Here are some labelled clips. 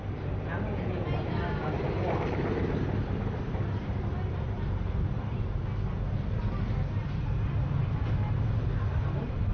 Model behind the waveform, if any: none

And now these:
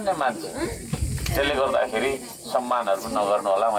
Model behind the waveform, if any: none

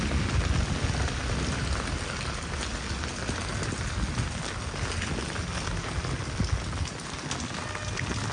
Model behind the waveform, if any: none